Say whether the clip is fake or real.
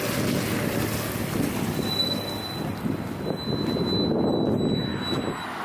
real